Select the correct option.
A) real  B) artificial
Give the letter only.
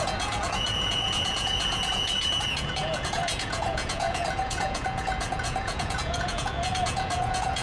B